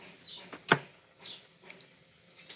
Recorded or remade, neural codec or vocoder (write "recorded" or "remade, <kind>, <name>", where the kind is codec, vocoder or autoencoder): recorded